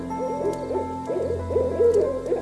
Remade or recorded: recorded